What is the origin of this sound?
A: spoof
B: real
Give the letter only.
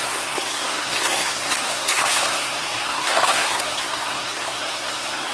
A